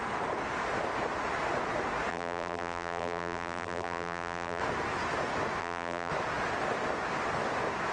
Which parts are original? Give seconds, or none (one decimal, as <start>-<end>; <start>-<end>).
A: 0.0-2.1; 4.6-5.6; 6.1-7.9